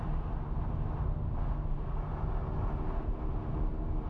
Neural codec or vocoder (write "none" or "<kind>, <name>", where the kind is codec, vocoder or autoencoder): none